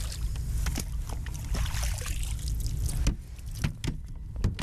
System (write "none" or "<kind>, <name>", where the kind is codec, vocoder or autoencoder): none